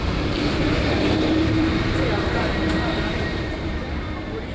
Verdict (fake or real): fake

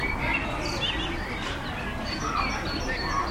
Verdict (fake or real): real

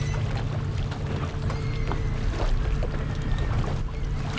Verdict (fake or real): real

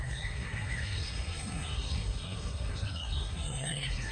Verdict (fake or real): fake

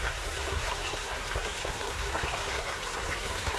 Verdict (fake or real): fake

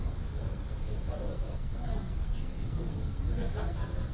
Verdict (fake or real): fake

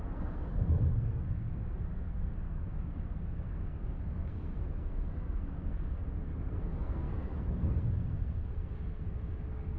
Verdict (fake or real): fake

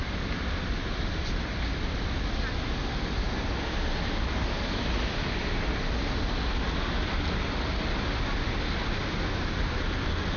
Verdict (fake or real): real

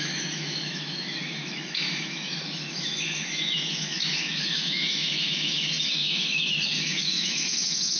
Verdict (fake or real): fake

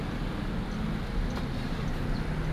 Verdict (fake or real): real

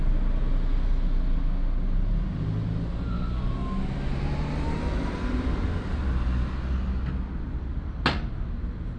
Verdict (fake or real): real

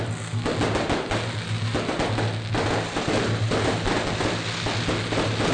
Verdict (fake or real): real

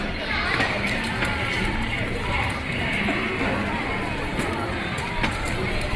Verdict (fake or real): real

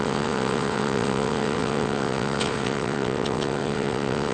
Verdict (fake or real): fake